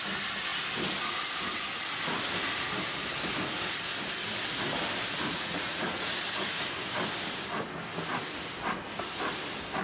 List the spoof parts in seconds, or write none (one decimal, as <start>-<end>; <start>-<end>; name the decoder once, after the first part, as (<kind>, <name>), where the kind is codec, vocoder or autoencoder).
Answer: 5.2-6.2 (vocoder, Vocos)